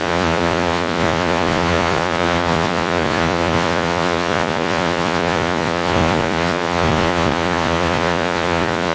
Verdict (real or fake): fake